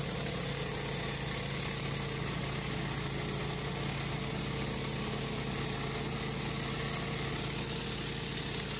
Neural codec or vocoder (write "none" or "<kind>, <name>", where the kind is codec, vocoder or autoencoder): none